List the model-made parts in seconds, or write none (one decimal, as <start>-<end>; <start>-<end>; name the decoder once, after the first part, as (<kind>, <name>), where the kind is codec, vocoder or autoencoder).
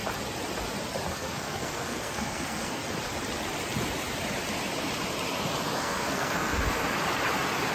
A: 1.1-2.8 (codec, SNAC); 5.8-6.8